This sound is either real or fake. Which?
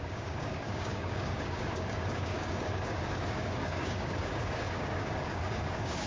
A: fake